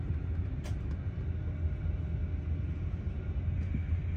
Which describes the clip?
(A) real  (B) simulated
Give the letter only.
A